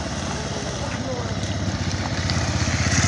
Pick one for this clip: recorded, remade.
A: recorded